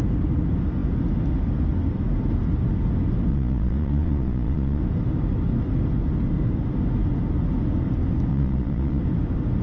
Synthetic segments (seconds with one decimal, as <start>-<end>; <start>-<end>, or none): 3.3-4.8; 8.3-9.0